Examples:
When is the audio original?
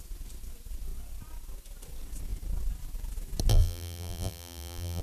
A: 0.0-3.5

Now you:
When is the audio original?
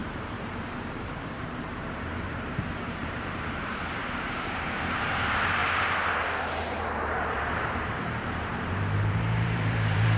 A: 5.6-7.3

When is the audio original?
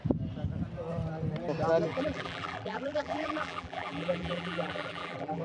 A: 0.0-1.9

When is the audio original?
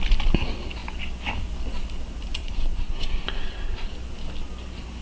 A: 0.0-2.4; 3.9-5.0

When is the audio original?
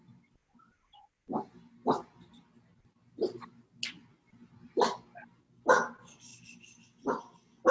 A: 0.0-6.3; 7.2-7.7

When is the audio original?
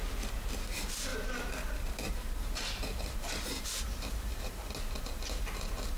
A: 0.0-1.1; 4.7-6.0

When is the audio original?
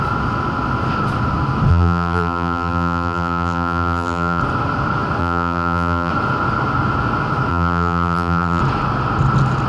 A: 0.0-1.7; 4.4-5.2; 6.1-7.5; 8.6-9.7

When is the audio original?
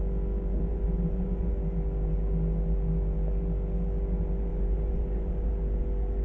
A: 0.0-0.7; 1.5-4.5; 5.5-6.2